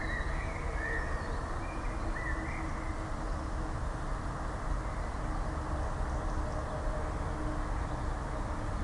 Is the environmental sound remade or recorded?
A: recorded